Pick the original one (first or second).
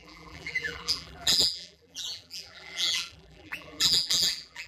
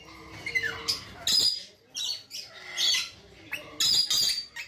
second